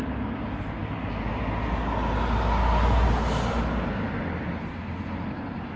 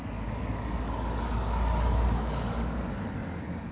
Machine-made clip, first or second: second